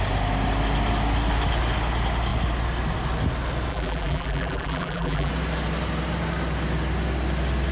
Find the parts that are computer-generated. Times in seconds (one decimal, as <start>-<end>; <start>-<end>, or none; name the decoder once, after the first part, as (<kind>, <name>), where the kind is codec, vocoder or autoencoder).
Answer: 3.7-5.3 (vocoder, BigVGAN v2)